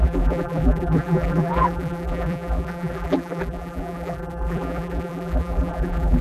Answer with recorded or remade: remade